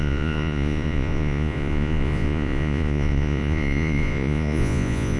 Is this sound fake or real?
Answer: fake